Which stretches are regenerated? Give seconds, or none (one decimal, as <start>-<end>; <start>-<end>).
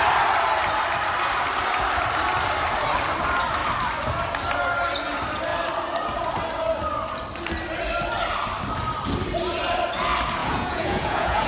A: 10.4-11.5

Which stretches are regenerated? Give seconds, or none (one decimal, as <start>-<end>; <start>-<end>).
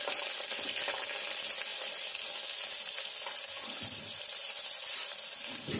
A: none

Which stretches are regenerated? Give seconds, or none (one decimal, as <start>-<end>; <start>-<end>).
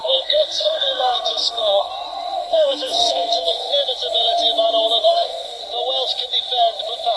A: 0.0-1.9; 2.4-3.7; 5.0-5.6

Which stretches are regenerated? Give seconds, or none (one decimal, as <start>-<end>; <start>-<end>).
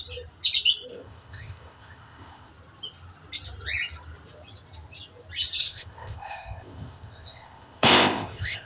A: 0.9-2.5; 5.6-8.7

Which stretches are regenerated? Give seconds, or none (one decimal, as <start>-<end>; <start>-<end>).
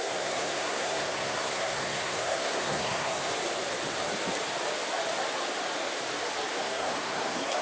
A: 0.0-3.3; 6.6-7.6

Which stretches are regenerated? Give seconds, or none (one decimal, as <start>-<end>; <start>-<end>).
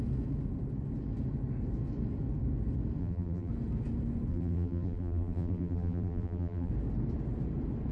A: 3.0-3.5; 4.3-6.7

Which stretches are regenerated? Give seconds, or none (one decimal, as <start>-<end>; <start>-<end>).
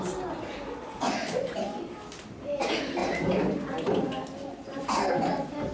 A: 3.0-5.1